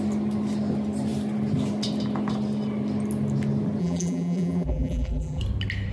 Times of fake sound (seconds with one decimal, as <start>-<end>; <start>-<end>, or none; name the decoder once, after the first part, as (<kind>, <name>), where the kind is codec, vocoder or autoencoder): 3.8-5.4 (vocoder, BigVGAN v2)